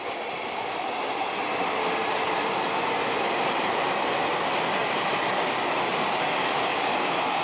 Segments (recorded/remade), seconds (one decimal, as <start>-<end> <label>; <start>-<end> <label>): 0.0-7.4 recorded